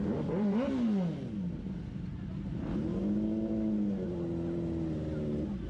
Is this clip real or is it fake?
real